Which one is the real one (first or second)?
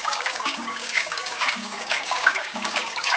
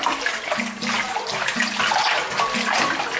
second